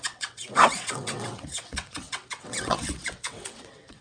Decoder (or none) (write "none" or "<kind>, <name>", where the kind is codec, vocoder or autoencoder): vocoder, WaveNeXt